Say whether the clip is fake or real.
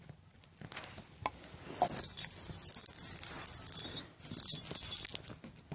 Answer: real